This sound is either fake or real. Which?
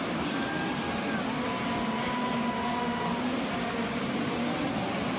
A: real